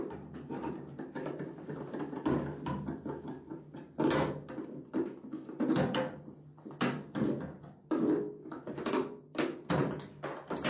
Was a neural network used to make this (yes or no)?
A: no